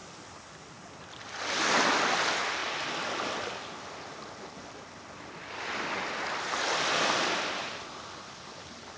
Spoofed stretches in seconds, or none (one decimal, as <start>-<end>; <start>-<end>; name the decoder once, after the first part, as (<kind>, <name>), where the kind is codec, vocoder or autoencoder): none